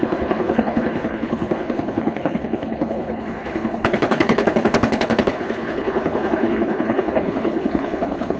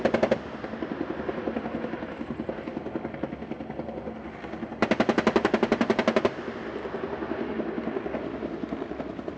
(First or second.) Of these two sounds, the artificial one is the first